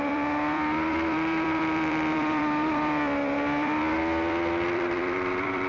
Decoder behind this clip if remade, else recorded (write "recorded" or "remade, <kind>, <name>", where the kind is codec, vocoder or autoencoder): remade, vocoder, BigVGAN v2